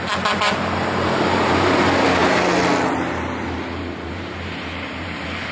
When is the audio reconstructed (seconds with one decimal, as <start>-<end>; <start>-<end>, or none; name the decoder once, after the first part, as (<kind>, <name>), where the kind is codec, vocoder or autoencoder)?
0.0-2.2 (vocoder, BigVGAN v2); 2.8-5.5